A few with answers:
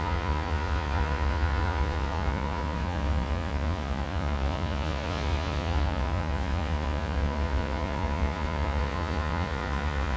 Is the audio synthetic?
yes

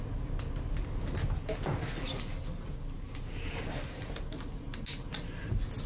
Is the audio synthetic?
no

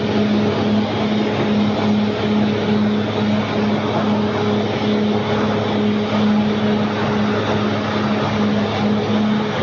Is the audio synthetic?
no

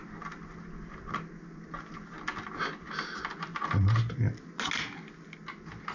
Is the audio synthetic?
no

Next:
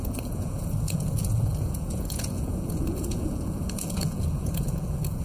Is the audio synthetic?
yes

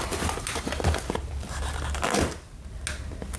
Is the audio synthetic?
no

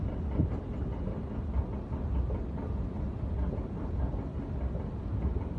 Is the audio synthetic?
no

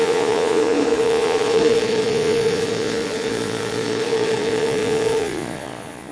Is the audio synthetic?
yes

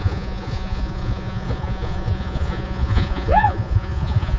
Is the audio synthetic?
yes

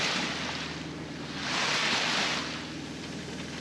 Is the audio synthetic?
no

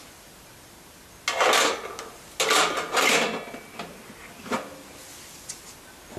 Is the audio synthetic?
no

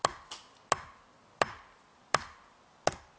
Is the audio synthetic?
no